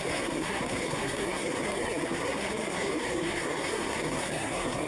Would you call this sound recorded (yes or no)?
no